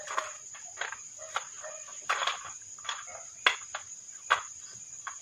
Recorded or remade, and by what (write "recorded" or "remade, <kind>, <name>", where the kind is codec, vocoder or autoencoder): recorded